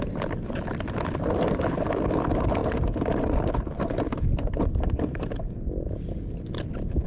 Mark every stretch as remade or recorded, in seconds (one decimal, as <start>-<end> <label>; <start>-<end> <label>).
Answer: 0.0-7.1 recorded